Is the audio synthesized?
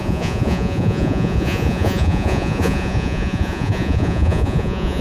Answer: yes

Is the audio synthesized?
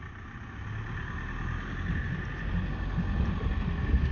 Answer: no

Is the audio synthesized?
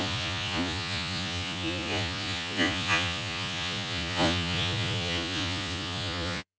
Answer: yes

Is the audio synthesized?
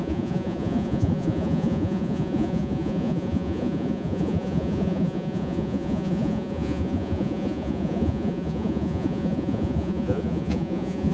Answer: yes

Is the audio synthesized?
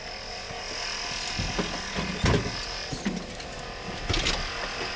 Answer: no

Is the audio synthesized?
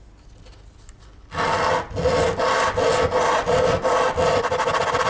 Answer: no